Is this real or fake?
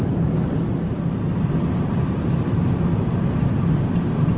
real